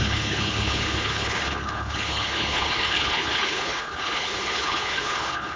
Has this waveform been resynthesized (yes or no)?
yes